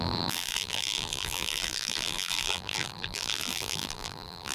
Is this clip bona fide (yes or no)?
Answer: no